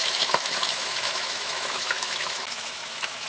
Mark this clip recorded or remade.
remade